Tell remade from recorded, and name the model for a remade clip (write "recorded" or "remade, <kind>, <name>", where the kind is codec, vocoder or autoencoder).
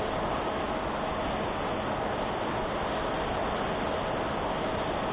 recorded